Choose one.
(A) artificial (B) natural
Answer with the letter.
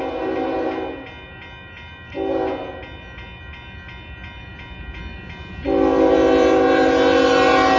B